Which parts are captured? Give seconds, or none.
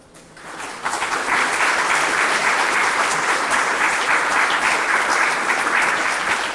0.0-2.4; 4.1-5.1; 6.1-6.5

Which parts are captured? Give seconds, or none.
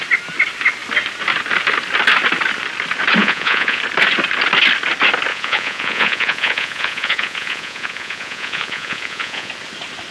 0.0-3.2; 3.8-5.3; 9.5-10.1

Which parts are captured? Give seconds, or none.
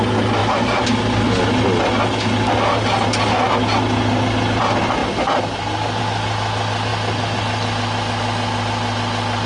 0.0-9.5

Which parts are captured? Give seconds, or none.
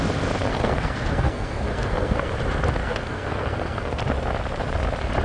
0.0-0.5; 2.3-2.8; 4.0-5.2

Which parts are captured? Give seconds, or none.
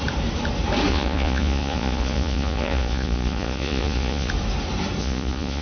0.0-0.9; 4.3-5.0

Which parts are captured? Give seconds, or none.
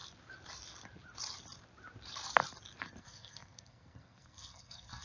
0.0-3.0